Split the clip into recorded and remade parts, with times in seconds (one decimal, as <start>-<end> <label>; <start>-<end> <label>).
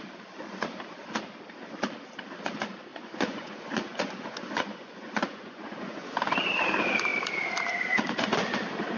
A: 0.0-2.9 recorded; 2.9-6.1 remade; 6.1-9.0 recorded